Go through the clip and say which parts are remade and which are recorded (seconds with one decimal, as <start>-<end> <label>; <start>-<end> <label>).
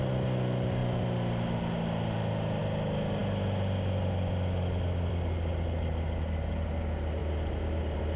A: 0.0-8.2 recorded